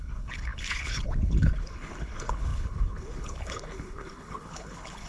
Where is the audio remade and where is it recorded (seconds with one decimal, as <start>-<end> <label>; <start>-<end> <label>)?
0.0-5.1 remade